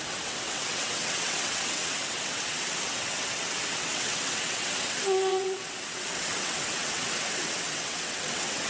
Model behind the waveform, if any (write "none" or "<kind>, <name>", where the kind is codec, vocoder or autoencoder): vocoder, WaveNeXt